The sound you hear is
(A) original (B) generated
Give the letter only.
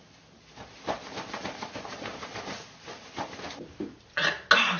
A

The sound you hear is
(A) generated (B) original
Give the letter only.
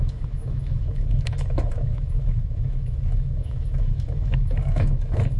A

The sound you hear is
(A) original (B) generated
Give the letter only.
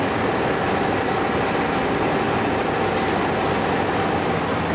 A